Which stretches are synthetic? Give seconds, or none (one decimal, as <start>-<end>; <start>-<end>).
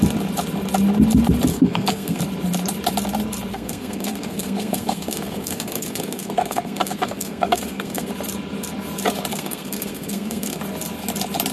1.5-2.2; 3.5-8.1; 9.3-10.6